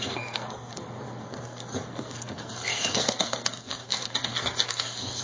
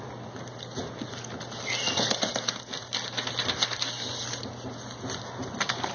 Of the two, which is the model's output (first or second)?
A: first